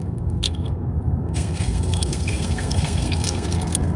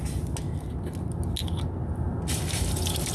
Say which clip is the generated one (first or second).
first